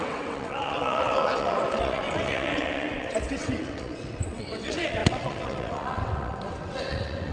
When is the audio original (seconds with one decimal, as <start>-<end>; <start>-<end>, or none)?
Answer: none